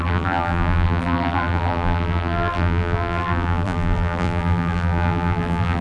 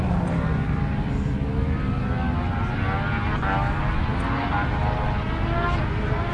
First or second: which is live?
second